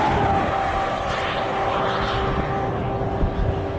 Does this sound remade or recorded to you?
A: recorded